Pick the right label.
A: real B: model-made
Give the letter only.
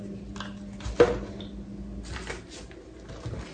A